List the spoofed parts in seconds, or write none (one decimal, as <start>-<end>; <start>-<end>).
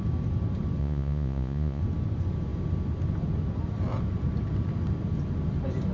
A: 0.8-1.8